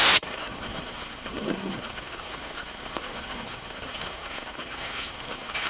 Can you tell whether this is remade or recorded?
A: remade